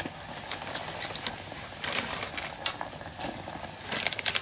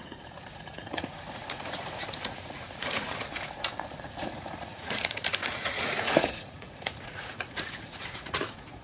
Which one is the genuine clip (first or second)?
first